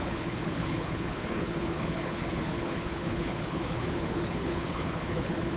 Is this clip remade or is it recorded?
remade